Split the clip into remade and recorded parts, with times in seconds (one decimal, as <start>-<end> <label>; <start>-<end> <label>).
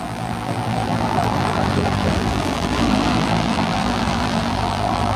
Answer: 0.0-5.2 remade